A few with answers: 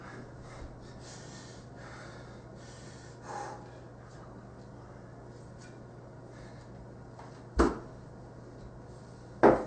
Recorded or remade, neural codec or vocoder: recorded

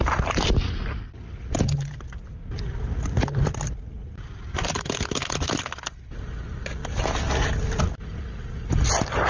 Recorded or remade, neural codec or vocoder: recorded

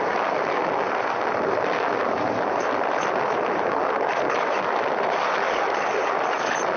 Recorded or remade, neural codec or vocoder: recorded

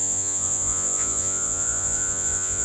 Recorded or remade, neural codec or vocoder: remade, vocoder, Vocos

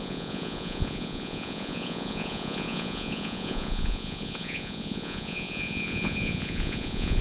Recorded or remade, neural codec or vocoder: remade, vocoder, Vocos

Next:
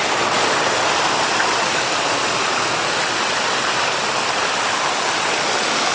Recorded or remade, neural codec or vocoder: recorded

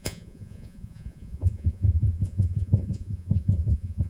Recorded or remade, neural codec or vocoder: remade, vocoder, Vocos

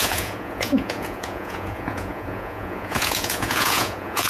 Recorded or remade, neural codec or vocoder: remade, vocoder, Vocos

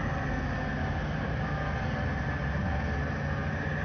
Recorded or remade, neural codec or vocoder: recorded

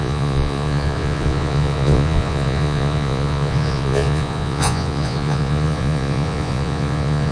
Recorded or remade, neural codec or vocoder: remade, vocoder, Vocos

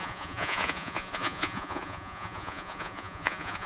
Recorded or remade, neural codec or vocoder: remade, vocoder, Vocos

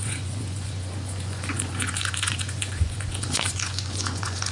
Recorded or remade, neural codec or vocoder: remade, vocoder, Vocos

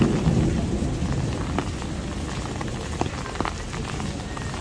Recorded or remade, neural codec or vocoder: recorded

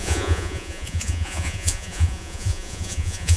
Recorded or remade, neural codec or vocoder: remade, vocoder, Vocos